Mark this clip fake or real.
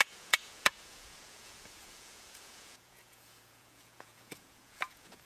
fake